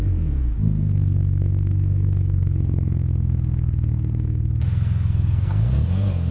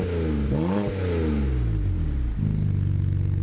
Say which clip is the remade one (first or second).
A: first